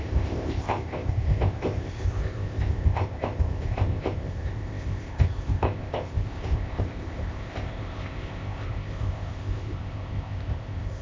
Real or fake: fake